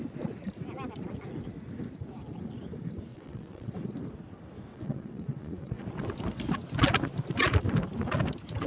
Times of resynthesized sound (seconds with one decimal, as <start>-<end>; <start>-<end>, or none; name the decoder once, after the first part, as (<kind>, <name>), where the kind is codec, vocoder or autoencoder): 3.1-3.7 (vocoder, WaveNeXt); 4.7-5.8